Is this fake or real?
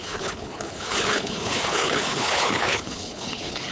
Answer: fake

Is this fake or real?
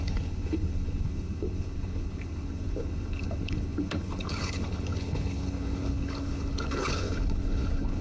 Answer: fake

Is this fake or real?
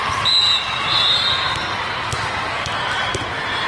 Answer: real